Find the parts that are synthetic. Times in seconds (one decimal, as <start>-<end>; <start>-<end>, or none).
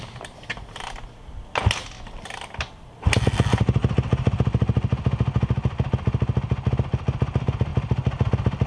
none